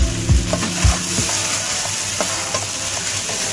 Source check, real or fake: real